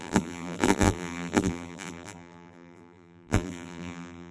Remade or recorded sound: remade